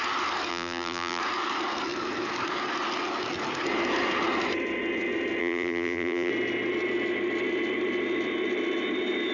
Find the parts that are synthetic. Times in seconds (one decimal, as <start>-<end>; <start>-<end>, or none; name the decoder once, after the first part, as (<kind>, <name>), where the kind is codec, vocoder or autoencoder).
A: 0.5-1.2 (vocoder, BigVGAN v2); 5.4-6.3